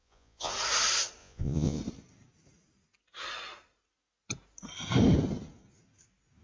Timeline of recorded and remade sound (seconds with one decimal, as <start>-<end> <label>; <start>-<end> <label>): 0.0-0.5 remade; 0.5-1.2 recorded; 1.2-1.8 remade; 1.8-6.4 recorded